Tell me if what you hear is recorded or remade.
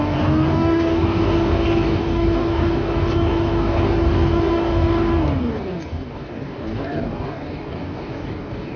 remade